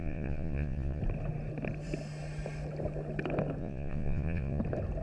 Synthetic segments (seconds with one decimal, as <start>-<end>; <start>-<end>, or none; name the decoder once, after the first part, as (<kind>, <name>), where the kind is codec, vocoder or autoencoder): 0.0-1.0 (vocoder, Vocos); 3.6-4.6